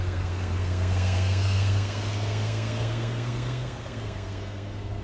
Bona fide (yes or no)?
no